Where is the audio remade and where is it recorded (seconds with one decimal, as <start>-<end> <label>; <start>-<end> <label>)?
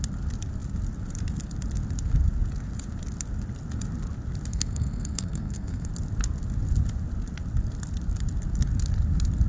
0.0-4.5 recorded; 4.5-5.9 remade; 5.9-9.5 recorded